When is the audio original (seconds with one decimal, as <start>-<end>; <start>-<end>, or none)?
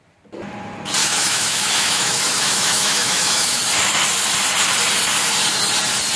0.0-1.0; 3.6-6.2